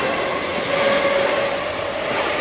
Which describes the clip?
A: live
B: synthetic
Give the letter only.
A